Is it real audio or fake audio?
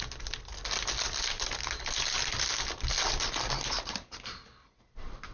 real